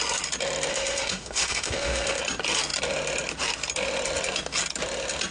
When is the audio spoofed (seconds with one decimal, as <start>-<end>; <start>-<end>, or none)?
0.7-2.2